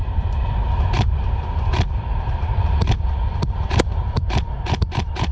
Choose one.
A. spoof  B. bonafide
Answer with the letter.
A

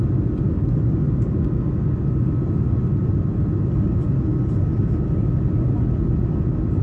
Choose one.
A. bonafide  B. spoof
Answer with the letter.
A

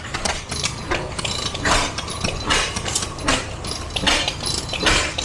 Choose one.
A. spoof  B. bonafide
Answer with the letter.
A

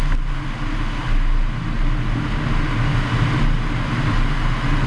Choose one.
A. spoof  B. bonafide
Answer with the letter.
B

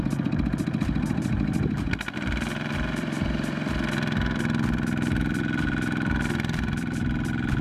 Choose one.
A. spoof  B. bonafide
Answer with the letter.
A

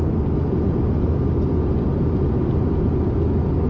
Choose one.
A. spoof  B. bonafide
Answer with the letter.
B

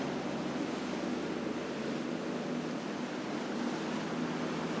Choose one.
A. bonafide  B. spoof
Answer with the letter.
A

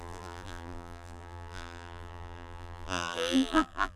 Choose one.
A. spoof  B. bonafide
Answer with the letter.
A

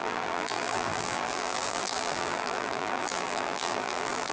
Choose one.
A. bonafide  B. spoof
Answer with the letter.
B